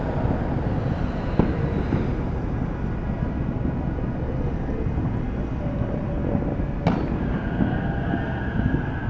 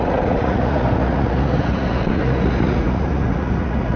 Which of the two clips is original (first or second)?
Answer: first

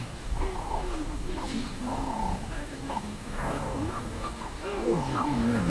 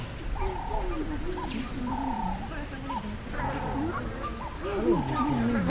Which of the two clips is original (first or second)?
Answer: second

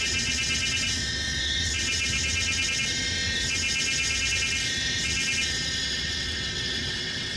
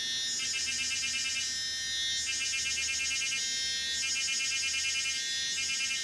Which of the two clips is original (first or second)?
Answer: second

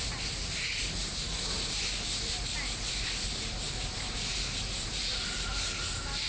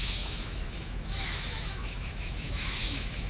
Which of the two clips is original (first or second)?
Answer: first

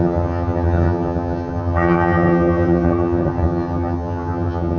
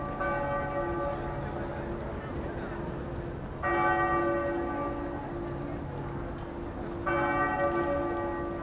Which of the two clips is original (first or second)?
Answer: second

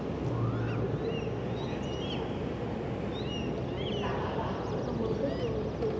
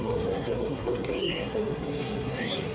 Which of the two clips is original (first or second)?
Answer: first